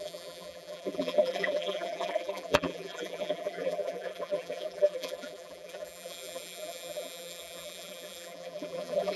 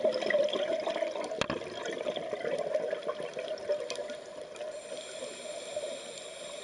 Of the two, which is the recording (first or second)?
second